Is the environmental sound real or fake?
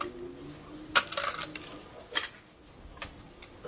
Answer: real